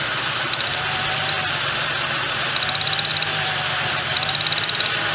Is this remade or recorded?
recorded